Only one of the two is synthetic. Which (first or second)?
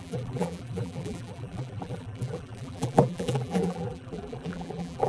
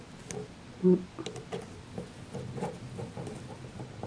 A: first